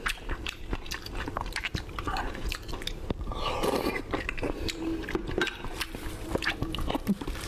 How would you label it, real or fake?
fake